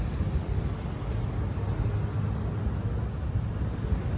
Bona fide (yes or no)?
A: yes